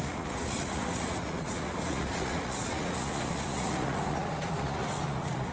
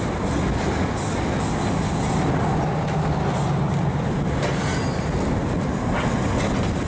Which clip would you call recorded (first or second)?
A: second